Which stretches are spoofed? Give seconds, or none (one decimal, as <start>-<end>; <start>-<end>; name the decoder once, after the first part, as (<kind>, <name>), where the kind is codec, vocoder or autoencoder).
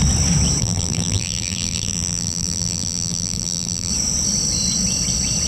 0.6-3.9 (vocoder, BigVGAN v2)